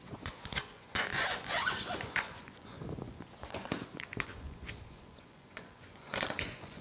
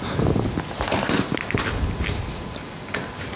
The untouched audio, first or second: second